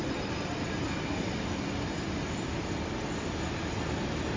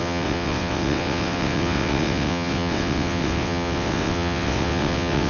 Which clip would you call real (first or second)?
first